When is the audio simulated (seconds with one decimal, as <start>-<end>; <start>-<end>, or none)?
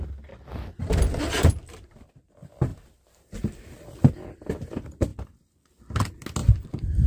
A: 2.7-4.3; 5.1-5.8; 6.4-7.1